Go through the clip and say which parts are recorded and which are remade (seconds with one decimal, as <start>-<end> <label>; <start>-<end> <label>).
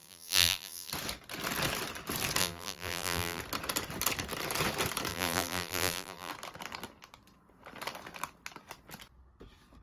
0.0-0.9 remade; 0.9-2.4 recorded; 2.4-3.4 remade; 3.4-5.1 recorded; 5.1-6.3 remade; 6.3-9.8 recorded